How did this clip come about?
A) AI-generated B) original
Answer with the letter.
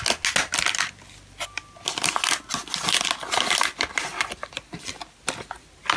B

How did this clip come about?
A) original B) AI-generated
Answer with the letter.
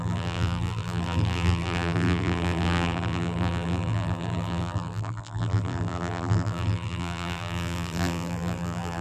B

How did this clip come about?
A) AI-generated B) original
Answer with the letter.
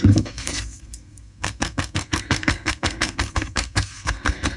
A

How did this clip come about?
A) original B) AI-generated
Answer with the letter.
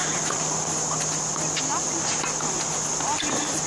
A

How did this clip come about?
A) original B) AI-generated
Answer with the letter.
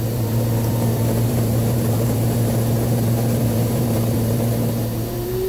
B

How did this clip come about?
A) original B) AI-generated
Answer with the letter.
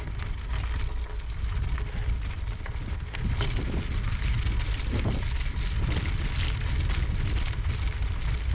A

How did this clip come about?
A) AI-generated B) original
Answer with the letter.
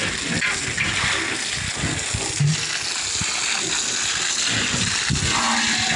B